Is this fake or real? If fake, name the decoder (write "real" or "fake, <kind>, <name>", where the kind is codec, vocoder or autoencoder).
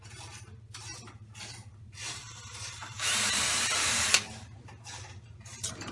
fake, vocoder, BigVGAN v2